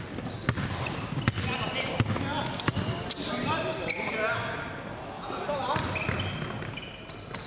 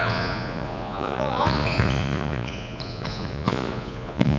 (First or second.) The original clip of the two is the first